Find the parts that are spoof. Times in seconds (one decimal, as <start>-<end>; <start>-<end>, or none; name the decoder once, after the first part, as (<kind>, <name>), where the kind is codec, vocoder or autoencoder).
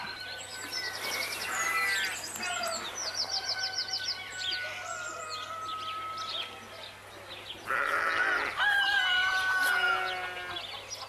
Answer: none